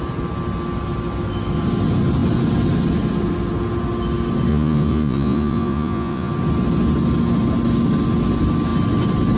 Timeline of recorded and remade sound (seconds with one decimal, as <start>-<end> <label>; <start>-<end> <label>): 0.0-4.5 recorded; 4.5-6.3 remade; 6.3-9.4 recorded